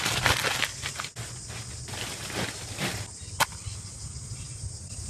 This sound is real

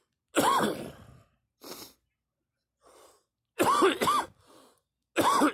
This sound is real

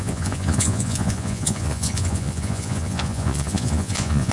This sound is fake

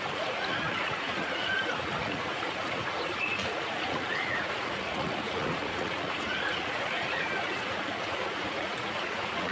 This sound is fake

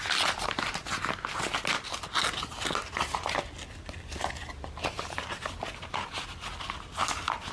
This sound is real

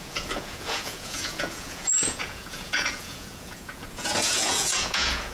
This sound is fake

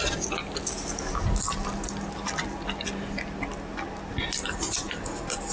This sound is real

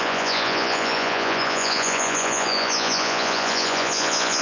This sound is fake